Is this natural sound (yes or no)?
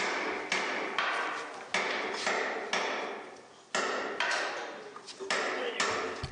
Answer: yes